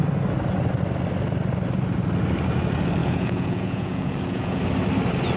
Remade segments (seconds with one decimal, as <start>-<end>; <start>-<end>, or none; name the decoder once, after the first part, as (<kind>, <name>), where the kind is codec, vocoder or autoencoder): 3.0-4.6 (vocoder, Vocos)